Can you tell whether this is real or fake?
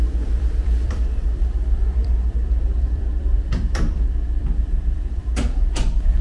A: fake